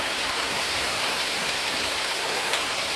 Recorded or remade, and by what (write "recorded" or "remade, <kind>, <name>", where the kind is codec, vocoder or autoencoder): remade, codec, SNAC